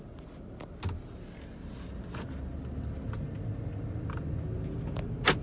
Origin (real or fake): real